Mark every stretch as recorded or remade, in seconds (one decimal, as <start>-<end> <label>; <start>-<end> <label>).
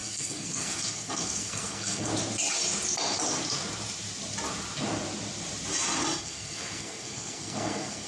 0.0-2.1 remade; 2.1-6.2 recorded; 6.2-8.1 remade